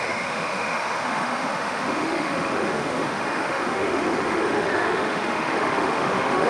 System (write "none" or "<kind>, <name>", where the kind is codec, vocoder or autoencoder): autoencoder, DAC-VAE